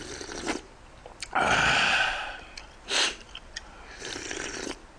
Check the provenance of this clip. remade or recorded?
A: recorded